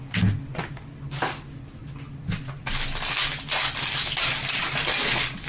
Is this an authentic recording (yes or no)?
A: yes